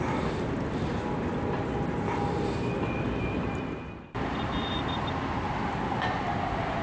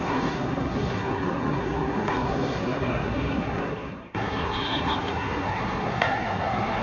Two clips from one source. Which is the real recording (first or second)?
first